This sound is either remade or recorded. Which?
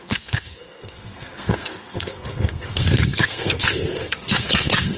remade